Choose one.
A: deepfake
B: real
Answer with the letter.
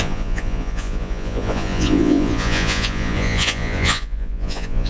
A